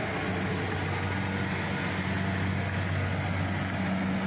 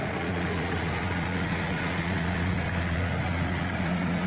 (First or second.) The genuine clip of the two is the first